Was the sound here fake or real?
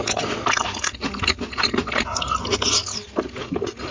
real